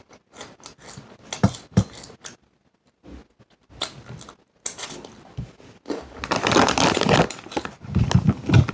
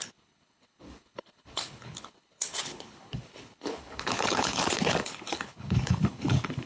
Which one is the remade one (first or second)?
second